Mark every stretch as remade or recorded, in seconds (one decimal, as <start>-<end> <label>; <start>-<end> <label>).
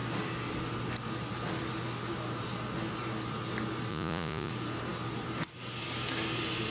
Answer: 0.0-3.9 recorded; 3.9-4.5 remade; 4.5-6.7 recorded